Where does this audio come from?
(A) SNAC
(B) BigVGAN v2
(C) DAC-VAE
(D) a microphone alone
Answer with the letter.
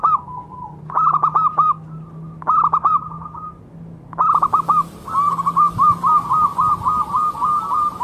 D